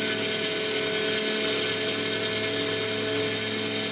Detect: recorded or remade recorded